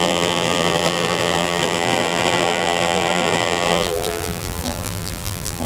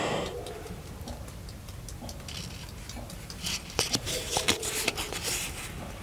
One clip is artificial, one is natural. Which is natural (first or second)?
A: second